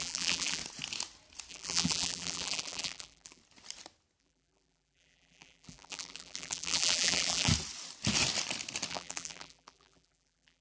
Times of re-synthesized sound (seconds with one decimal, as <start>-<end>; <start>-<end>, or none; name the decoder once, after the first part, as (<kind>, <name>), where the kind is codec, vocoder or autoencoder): 0.0-0.6 (vocoder, BigVGAN v2); 1.5-3.4; 4.2-7.5; 8.9-10.6